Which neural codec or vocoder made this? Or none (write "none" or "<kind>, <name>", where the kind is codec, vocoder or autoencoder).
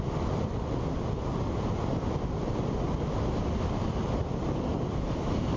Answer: none